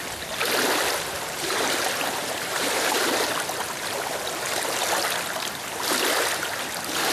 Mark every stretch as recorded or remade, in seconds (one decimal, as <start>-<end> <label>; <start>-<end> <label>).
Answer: 0.0-2.2 recorded; 2.2-3.3 remade; 3.3-7.1 recorded